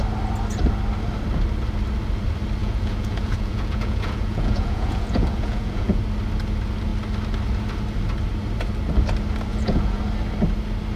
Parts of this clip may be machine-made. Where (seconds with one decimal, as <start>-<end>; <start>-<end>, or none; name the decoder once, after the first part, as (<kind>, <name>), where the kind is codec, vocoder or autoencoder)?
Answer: 2.6-6.0 (vocoder, Vocos); 9.5-10.0